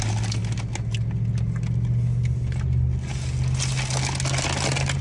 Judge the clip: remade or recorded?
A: recorded